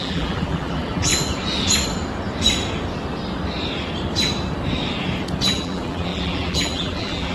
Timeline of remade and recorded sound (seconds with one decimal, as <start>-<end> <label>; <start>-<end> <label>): 0.0-1.1 remade; 1.1-5.5 recorded; 5.5-7.3 remade